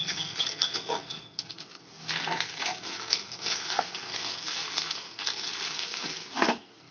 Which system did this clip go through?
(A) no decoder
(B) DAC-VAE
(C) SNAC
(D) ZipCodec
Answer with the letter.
C